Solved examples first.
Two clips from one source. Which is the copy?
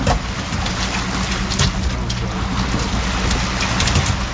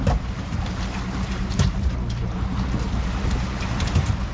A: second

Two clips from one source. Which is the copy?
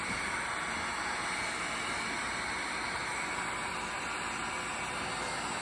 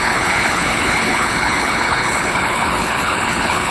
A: second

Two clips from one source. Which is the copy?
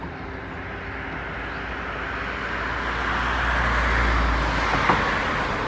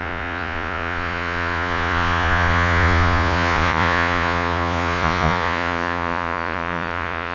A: second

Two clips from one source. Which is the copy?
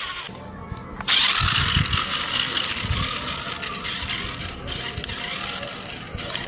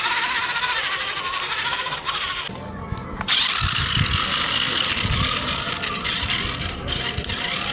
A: second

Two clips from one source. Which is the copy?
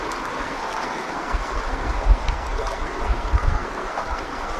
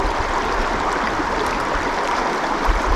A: first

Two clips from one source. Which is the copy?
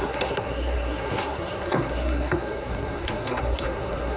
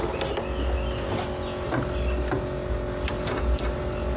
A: first